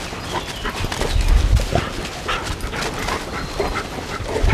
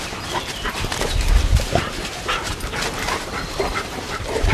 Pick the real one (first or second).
first